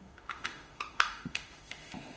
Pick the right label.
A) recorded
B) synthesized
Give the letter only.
B